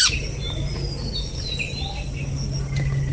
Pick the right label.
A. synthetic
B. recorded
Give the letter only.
B